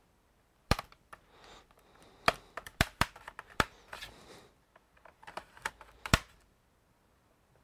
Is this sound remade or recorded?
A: remade